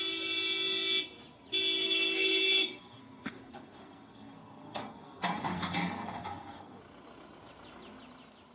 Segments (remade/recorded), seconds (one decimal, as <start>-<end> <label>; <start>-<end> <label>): 0.0-1.8 recorded; 1.8-6.8 remade; 6.8-8.5 recorded